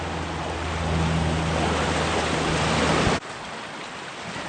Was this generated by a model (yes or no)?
no